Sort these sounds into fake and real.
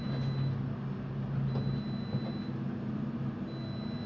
real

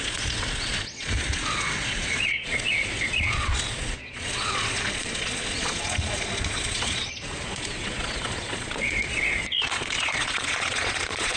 fake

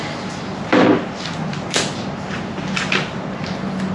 real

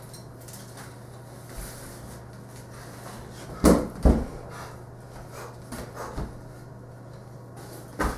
real